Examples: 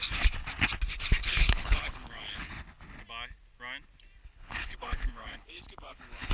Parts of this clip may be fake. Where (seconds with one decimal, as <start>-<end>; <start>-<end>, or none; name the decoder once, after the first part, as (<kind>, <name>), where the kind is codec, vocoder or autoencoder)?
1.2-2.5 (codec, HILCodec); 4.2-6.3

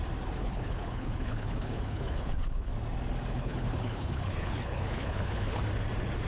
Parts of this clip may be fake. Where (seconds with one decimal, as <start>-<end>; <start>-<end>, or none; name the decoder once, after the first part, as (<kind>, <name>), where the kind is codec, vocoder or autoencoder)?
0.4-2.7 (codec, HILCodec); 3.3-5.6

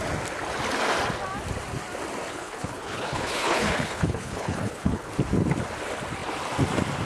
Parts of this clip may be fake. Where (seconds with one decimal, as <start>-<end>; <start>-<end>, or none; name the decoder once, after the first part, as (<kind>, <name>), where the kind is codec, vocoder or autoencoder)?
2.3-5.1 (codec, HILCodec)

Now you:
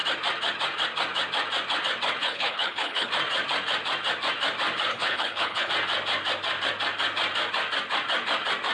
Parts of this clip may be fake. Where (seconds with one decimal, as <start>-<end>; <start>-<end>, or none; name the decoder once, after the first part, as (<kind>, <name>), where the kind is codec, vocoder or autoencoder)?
2.2-3.1 (codec, HILCodec); 4.9-5.7

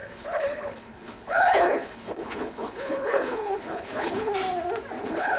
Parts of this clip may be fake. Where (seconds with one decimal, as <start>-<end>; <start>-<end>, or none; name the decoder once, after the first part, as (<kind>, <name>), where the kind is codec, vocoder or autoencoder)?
0.0-4.3 (codec, HILCodec); 5.0-5.4

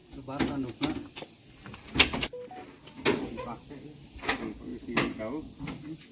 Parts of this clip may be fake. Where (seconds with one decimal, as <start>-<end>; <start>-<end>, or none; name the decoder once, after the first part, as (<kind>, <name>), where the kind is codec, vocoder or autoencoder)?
none